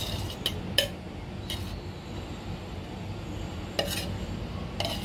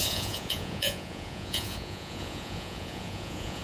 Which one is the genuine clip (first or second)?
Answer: first